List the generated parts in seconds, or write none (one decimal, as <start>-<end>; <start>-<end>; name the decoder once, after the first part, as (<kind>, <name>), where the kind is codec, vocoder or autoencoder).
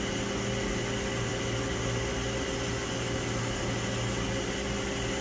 none